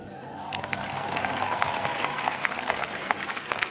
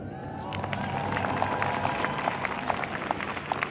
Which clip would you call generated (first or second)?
first